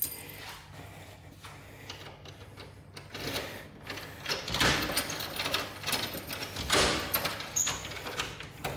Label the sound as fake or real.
real